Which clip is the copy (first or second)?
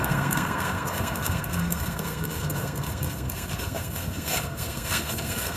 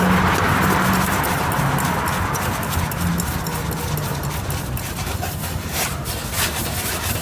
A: first